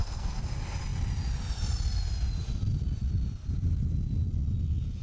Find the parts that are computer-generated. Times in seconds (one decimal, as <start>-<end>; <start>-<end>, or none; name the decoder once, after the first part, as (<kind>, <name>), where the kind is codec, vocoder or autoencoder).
0.0-0.5 (codec, SNAC)